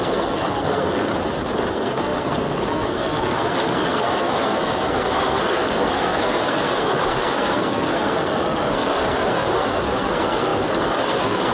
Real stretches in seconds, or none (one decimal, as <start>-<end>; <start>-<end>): 1.1-1.7